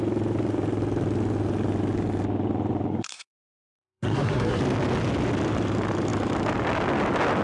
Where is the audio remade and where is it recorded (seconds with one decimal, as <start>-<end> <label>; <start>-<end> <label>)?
0.0-2.9 recorded; 2.9-4.6 remade; 4.6-7.4 recorded